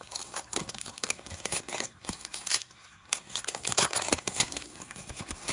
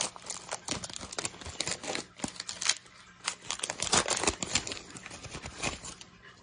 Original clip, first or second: second